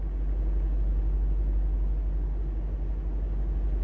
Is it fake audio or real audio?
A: real